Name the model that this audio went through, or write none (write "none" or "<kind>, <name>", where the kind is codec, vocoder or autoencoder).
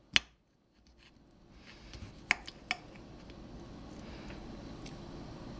none